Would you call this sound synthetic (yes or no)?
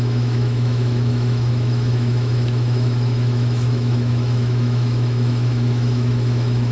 yes